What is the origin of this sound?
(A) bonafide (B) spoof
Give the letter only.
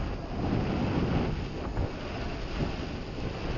A